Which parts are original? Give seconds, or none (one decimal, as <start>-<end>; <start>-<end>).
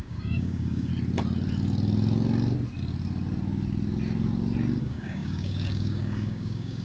0.9-4.8